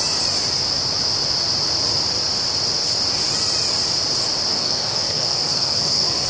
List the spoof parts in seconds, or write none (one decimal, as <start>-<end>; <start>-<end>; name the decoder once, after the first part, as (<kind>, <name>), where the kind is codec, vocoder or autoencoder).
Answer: 4.5-6.3 (codec, SNAC)